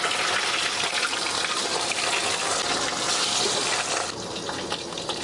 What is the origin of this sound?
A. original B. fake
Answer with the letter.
A